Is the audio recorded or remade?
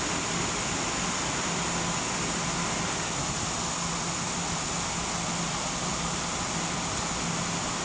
recorded